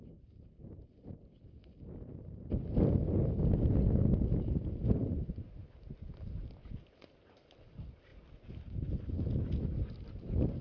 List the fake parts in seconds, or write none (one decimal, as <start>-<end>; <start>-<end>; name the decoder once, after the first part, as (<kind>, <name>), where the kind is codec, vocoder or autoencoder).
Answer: 5.6-6.3 (vocoder, BigVGAN v2); 8.1-8.6